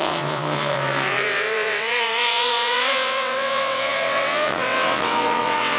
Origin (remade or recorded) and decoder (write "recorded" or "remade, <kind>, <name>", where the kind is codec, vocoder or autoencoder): remade, vocoder, WaveNeXt